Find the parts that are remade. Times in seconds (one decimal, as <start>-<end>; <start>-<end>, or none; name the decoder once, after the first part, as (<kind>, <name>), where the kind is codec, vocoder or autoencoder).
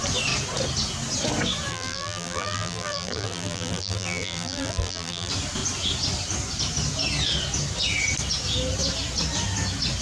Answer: 1.7-5.3 (vocoder, BigVGAN v2)